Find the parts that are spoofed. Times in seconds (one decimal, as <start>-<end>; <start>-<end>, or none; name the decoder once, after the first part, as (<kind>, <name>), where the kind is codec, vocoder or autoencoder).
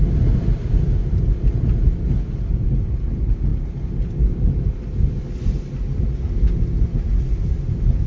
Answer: none